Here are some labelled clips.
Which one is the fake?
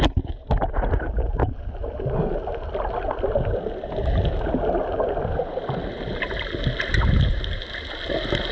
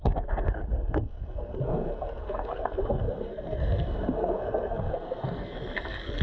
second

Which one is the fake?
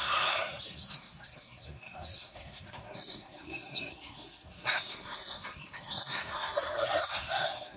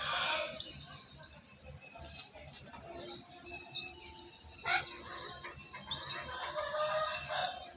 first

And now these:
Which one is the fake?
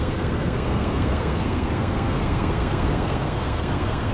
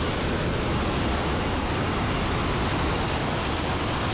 first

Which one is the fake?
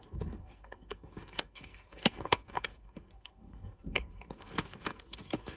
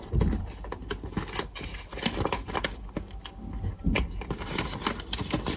first